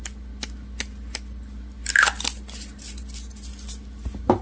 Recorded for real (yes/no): yes